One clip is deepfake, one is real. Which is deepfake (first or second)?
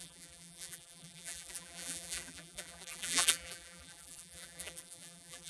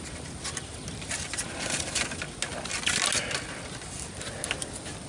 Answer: first